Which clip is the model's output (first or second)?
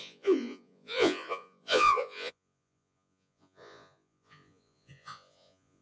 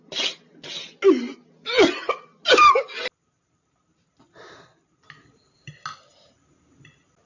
first